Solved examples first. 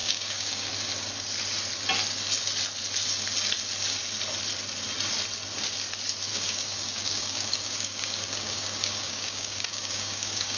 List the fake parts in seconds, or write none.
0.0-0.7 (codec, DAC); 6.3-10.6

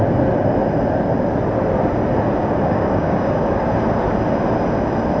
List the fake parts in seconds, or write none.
2.4-3.6 (codec, DAC)

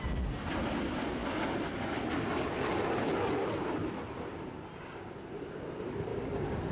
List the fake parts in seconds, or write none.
6.1-6.7 (codec, DAC)

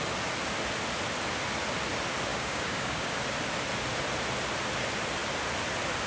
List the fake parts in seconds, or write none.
2.3-3.2 (codec, DAC)

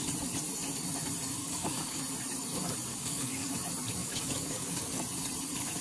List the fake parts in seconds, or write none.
1.4-2.0 (codec, DAC); 2.9-3.5; 4.0-4.8

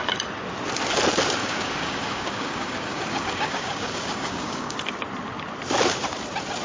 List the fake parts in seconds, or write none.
1.4-4.8 (codec, DAC)

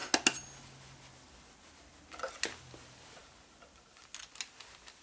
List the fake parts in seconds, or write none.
none

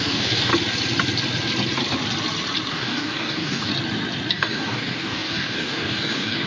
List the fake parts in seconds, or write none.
0.0-0.5 (codec, DAC); 2.7-3.7; 4.3-6.5